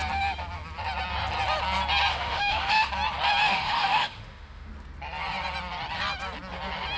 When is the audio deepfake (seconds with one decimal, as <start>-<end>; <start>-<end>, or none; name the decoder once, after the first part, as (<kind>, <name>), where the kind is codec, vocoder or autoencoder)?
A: 2.1-2.9 (autoencoder, DAC-VAE); 3.4-4.7